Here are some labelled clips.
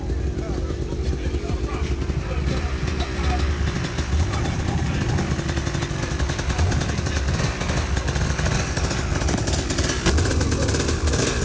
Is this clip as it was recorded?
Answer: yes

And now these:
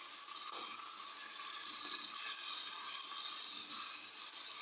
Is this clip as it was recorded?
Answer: yes